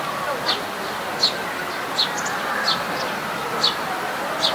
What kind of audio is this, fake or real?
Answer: real